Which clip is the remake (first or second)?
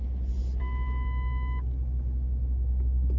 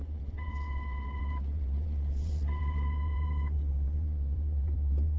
second